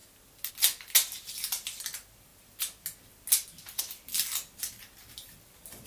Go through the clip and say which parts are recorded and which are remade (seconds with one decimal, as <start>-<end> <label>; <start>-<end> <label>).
0.0-5.9 recorded